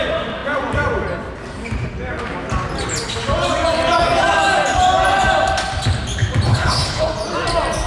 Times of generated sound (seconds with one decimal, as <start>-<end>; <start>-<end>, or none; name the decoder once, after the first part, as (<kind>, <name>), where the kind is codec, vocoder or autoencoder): 6.5-7.1 (codec, HILCodec)